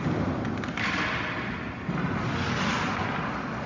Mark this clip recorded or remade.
recorded